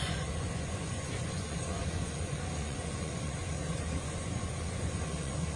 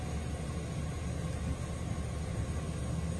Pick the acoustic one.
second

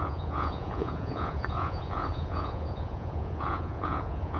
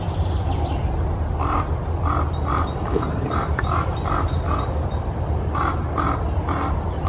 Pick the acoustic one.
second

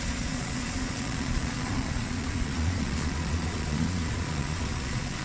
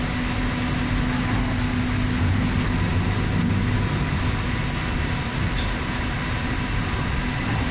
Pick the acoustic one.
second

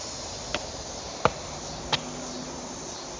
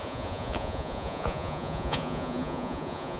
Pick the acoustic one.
first